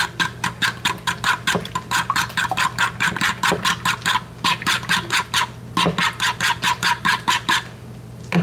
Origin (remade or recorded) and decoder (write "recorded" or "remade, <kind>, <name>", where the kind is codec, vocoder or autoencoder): recorded